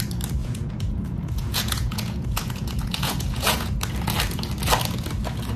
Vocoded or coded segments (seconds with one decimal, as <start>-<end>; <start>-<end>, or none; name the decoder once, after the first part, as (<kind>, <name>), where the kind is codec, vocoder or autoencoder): 0.4-3.8 (vocoder, Vocos)